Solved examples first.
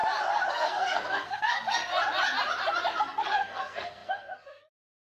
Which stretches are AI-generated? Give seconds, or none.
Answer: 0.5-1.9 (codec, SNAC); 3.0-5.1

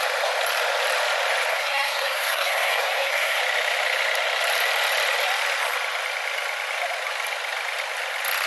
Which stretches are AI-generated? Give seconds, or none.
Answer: 1.5-3.4 (codec, SNAC)

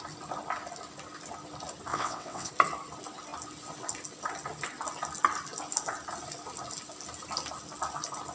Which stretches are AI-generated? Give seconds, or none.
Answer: 1.9-2.5 (vocoder, WaveNeXt)

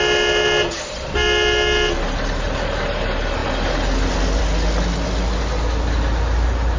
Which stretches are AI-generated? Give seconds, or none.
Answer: none

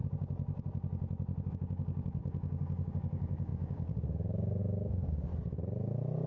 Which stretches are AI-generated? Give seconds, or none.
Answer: 1.5-5.3 (codec, DAC)

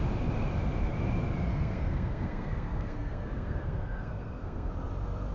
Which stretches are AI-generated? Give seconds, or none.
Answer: 1.5-4.7 (codec, SNAC)